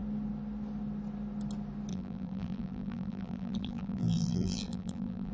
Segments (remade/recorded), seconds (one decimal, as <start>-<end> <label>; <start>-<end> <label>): 0.0-1.9 recorded; 1.9-5.3 remade